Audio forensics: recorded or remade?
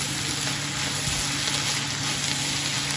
recorded